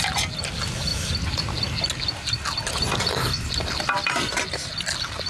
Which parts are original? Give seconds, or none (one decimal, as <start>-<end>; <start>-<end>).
0.0-5.3